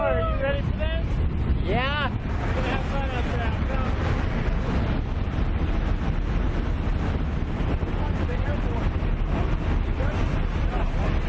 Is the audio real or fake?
real